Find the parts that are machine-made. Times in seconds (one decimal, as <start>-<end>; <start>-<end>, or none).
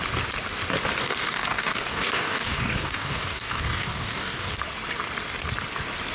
1.0-4.5